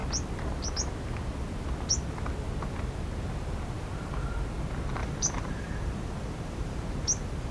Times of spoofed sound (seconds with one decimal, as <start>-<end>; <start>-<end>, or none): 5.0-7.5